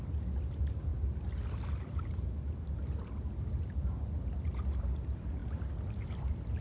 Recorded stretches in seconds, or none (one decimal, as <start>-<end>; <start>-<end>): 0.0-6.6